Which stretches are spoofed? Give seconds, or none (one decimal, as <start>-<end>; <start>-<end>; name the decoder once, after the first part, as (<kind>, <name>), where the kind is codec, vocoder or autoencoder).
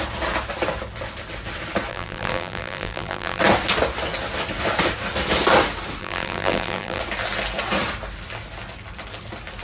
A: 1.9-3.4 (vocoder, BigVGAN v2); 6.0-7.0